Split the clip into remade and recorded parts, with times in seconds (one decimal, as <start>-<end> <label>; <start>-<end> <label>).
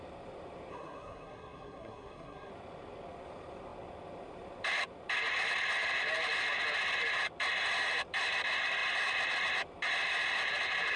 0.0-0.7 recorded; 0.7-2.5 remade; 2.5-11.0 recorded